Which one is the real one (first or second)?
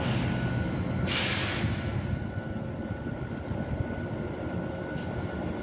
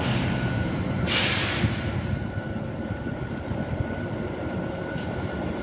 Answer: first